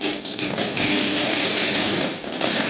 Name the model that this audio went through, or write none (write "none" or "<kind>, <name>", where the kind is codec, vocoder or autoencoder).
codec, DAC